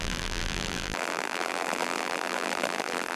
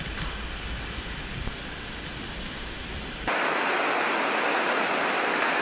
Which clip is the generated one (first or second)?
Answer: first